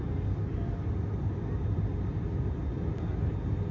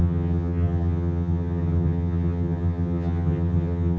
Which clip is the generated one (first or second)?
second